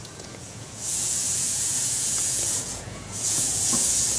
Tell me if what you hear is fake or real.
fake